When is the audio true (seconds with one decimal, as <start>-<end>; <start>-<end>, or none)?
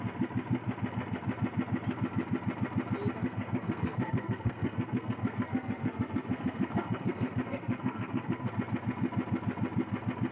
0.0-3.2; 8.5-10.3